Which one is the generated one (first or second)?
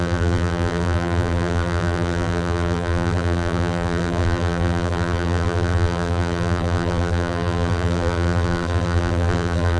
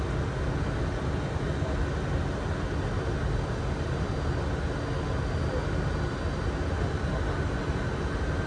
first